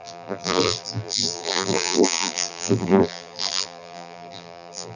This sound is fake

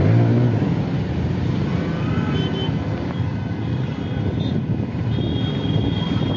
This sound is real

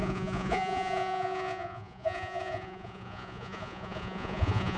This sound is fake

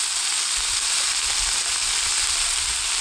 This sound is real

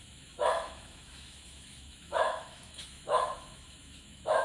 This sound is fake